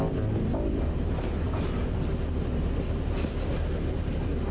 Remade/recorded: recorded